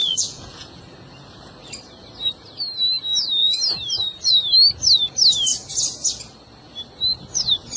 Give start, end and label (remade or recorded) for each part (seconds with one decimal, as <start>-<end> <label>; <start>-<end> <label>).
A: 0.0-0.8 remade; 0.8-7.8 recorded